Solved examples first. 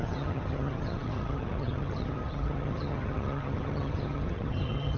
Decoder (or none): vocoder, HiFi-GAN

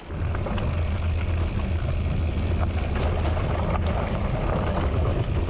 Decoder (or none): none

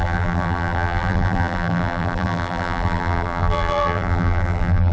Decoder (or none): vocoder, BigVGAN v2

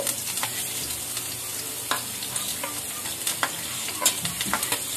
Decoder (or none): none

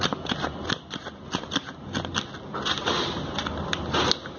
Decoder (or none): none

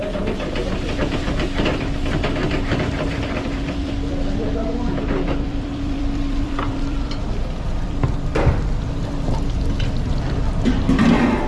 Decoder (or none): vocoder, BigVGAN v2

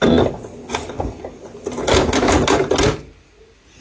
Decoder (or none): none